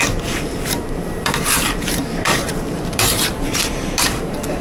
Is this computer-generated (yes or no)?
yes